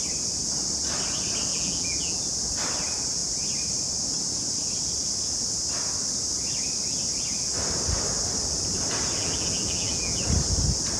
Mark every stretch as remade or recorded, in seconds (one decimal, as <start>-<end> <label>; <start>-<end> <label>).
0.0-1.5 recorded; 1.5-2.2 remade; 2.2-9.2 recorded; 9.2-10.2 remade; 10.2-11.0 recorded